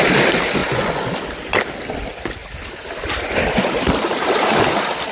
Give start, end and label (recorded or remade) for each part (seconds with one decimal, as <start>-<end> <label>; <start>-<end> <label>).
0.0-0.6 recorded; 0.6-1.1 remade; 1.1-5.1 recorded